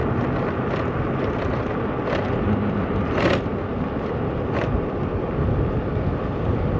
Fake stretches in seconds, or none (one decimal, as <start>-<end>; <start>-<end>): none